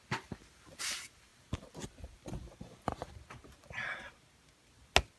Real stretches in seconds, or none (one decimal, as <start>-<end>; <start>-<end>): 0.0-1.3; 3.1-5.2